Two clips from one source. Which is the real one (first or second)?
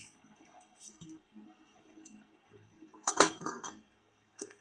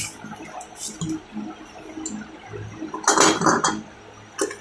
second